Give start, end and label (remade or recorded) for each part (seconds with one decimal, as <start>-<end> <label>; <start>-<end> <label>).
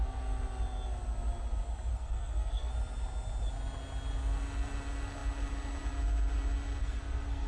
0.0-1.9 recorded; 1.9-2.7 remade; 2.7-6.8 recorded; 6.8-7.5 remade